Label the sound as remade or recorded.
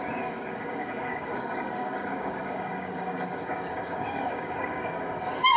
remade